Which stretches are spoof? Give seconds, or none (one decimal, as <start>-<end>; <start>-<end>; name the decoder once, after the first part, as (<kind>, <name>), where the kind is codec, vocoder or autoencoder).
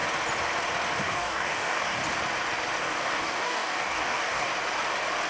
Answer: 1.0-2.0 (codec, DAC); 2.8-4.5